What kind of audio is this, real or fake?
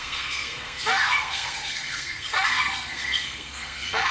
fake